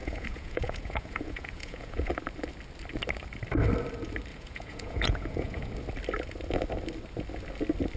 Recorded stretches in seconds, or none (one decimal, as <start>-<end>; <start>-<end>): 2.1-4.3; 5.7-8.0